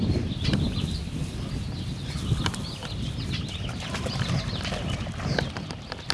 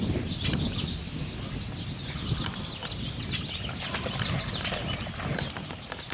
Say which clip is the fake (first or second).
first